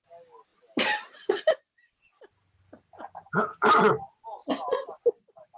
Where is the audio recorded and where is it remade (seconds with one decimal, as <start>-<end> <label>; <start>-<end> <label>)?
0.0-0.5 recorded; 0.5-3.9 remade; 3.9-4.4 recorded; 4.4-5.6 remade